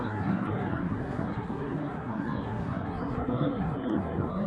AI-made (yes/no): yes